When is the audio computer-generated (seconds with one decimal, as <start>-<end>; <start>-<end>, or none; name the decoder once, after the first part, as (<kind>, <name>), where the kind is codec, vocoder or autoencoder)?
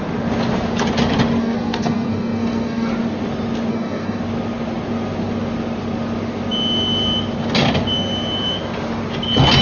1.4-2.9 (codec, SNAC); 3.7-4.2